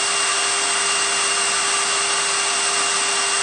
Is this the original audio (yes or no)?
yes